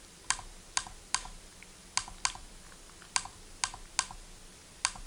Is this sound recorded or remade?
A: recorded